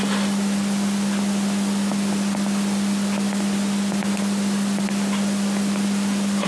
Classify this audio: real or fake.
real